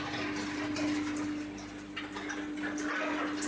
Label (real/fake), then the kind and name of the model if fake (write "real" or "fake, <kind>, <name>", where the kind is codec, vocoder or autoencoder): real